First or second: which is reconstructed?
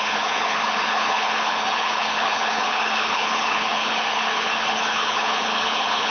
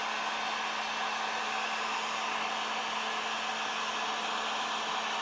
first